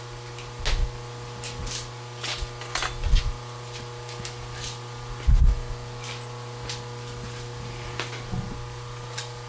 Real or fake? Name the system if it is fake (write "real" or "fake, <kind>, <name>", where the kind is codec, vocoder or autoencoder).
real